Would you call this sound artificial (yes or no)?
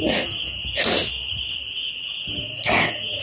no